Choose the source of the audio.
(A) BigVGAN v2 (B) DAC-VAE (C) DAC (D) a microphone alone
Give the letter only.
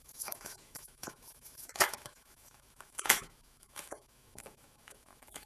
B